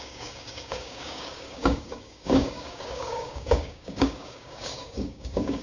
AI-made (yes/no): yes